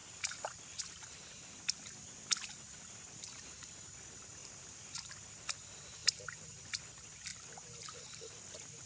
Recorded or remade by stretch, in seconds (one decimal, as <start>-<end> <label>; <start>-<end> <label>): 0.0-1.3 remade; 1.3-4.4 recorded; 4.4-5.1 remade; 5.1-6.0 recorded; 6.0-6.8 remade; 6.8-7.3 recorded; 7.3-8.4 remade; 8.4-8.9 recorded

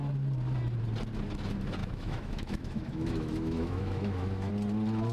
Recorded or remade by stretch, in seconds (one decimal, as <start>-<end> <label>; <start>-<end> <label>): 0.0-1.8 recorded; 1.8-4.5 remade; 4.5-5.1 recorded

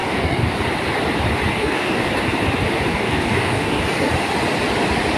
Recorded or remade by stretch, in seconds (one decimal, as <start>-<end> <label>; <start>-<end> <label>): 0.0-0.6 remade; 0.6-1.5 recorded; 1.5-2.1 remade; 2.1-2.9 recorded; 2.9-3.8 remade; 3.8-5.2 recorded

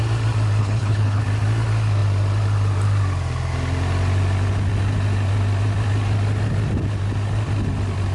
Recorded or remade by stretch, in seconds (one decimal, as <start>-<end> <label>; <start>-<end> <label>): 0.0-0.6 recorded; 0.6-1.2 remade; 1.2-8.1 recorded

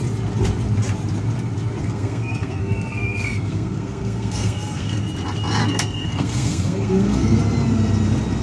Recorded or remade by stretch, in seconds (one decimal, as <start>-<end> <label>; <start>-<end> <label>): 0.0-1.8 recorded; 1.8-5.0 remade; 5.0-5.6 recorded; 5.6-7.4 remade; 7.4-8.4 recorded